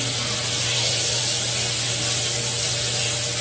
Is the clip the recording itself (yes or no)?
yes